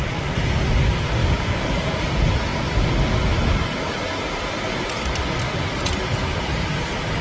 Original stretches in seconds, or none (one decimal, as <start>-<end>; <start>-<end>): 0.0-1.2; 2.1-7.2